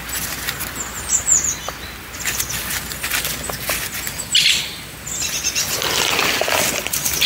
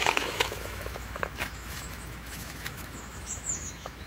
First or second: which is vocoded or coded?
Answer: second